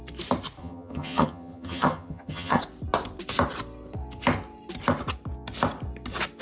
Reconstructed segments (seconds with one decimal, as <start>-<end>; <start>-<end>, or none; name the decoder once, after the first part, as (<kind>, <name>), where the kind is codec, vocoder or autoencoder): 0.6-2.6 (vocoder, HiFi-GAN)